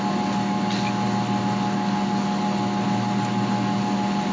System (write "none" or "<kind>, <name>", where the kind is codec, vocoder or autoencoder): none